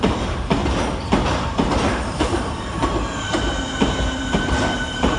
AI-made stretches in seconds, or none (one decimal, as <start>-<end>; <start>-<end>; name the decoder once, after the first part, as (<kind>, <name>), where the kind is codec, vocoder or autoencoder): 0.0-0.6 (vocoder, BigVGAN v2); 1.5-2.9; 4.2-5.2